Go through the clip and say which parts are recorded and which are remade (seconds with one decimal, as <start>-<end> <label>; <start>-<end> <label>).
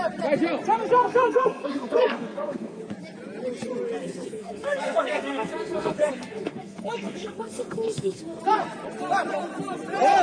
0.0-1.0 recorded; 1.0-2.8 remade; 2.8-4.0 recorded; 4.0-8.4 remade; 8.4-10.2 recorded